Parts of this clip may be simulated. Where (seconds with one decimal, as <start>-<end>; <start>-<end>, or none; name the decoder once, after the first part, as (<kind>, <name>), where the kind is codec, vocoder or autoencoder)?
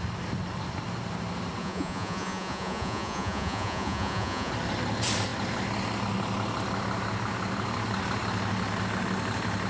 1.6-4.5 (vocoder, Vocos)